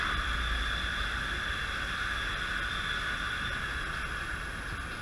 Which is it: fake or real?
real